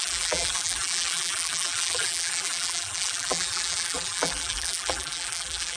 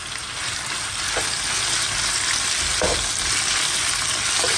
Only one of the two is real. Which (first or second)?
second